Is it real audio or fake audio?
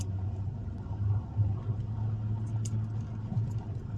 real